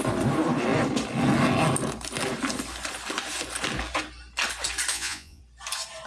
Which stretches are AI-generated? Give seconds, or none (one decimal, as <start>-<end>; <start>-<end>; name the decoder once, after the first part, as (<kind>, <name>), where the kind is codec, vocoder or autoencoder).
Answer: 4.9-5.4 (vocoder, Vocos)

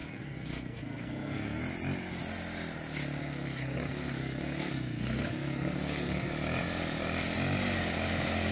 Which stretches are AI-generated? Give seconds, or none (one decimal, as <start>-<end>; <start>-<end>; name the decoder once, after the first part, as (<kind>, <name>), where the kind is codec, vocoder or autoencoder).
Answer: 0.0-1.6 (codec, SNAC); 3.2-6.3

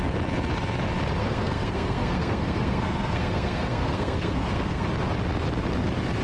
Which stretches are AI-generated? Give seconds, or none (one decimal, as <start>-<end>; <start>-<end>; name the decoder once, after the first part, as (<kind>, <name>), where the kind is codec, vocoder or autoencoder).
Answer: 1.2-4.9 (codec, SNAC)

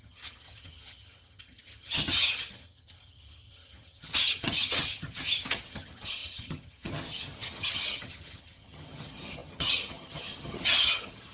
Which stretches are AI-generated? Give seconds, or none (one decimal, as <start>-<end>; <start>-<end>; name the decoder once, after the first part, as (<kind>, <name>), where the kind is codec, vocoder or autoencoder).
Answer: 0.0-11.3 (vocoder, HiFi-GAN)